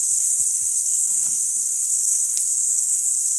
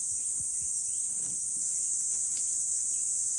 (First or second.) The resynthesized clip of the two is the first